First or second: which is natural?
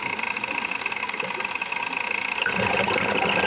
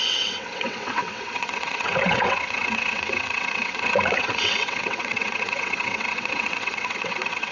first